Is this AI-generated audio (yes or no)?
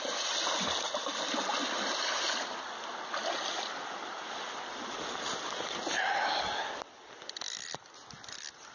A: no